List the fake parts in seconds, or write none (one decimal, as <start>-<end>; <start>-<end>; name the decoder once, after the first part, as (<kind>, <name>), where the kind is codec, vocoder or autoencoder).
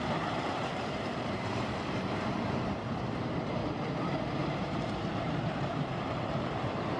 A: 0.0-3.6 (vocoder, BigVGAN v2); 4.3-7.0